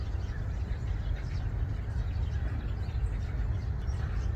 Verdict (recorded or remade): recorded